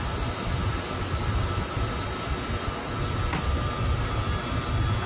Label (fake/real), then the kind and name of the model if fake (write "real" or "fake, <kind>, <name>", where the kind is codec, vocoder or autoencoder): real